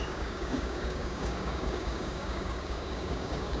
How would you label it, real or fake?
fake